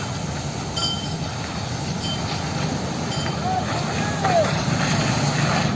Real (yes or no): yes